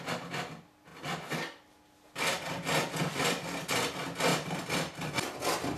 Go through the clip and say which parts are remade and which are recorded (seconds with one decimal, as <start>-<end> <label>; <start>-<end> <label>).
0.0-4.3 recorded; 4.3-5.1 remade; 5.1-5.8 recorded